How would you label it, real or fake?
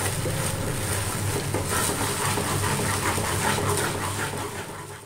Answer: real